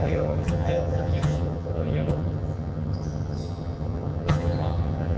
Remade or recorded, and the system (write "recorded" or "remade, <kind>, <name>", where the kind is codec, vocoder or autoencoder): remade, vocoder, HiFi-GAN